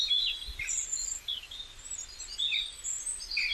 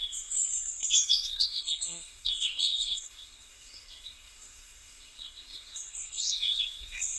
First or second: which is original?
first